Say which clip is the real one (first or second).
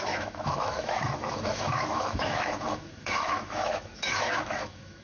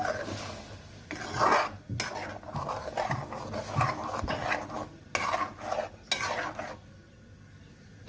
second